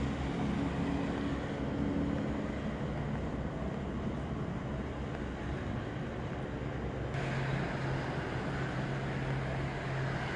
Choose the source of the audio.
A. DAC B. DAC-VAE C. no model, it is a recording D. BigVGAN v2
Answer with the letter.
C